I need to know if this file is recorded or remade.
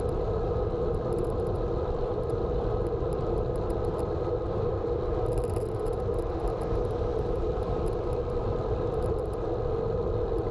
remade